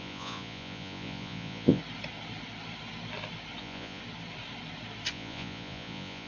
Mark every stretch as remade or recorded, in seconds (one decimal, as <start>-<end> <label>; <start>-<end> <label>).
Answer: 0.0-1.8 remade; 1.8-3.6 recorded; 3.6-4.0 remade; 4.0-5.1 recorded; 5.1-6.3 remade